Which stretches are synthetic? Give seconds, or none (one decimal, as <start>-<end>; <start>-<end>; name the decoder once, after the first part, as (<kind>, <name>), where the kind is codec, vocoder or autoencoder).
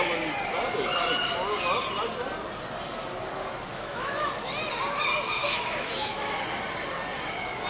3.7-4.5 (autoencoder, DAC-VAE); 5.4-6.4